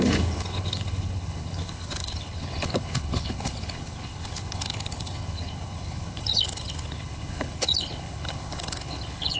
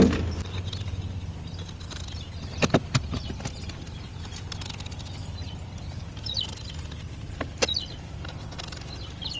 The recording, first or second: second